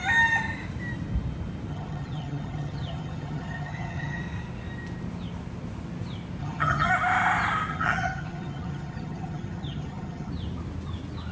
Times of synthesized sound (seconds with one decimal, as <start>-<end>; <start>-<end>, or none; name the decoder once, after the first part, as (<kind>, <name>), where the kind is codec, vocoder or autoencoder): 1.7-4.2 (vocoder, HiFi-GAN); 6.4-6.9; 7.7-10.3